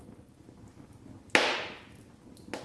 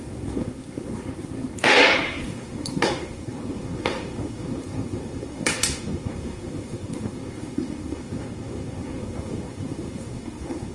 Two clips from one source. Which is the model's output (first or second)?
second